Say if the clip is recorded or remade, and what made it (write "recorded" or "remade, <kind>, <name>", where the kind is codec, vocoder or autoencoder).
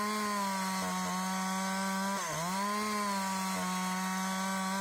recorded